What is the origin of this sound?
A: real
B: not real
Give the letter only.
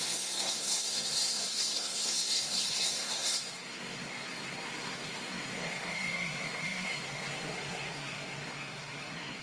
B